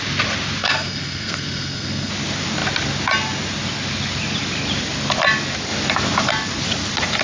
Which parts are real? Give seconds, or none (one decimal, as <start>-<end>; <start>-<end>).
0.0-0.6; 2.1-7.2